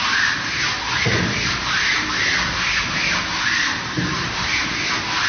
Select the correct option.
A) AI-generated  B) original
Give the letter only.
B